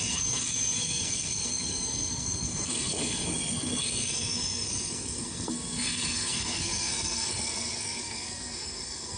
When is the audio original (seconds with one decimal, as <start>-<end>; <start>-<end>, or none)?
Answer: none